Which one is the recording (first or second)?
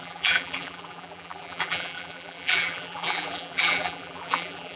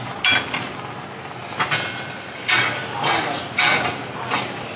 second